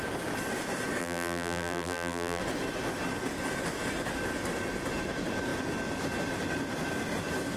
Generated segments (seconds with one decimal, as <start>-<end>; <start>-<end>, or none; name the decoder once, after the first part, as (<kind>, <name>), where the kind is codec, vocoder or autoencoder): 1.0-2.4 (vocoder, BigVGAN v2)